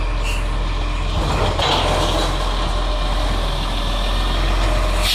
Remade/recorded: recorded